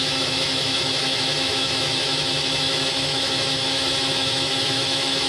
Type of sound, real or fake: fake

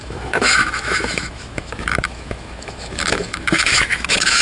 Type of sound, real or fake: fake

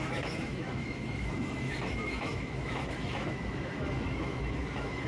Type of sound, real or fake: fake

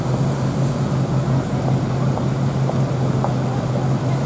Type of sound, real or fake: real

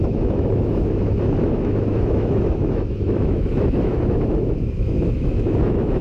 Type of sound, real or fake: fake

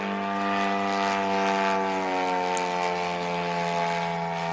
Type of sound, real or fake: real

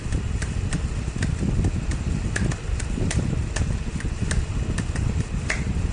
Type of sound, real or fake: real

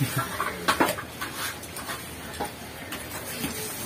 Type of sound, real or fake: real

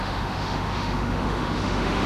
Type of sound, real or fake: fake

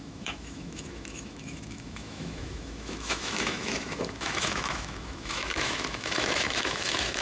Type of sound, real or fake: fake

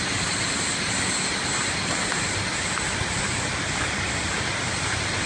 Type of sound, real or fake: real